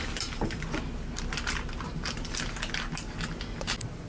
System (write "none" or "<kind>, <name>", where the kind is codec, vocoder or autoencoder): none